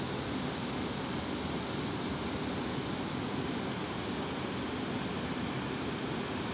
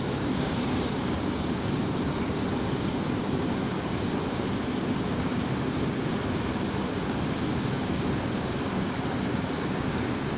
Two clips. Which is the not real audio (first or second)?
second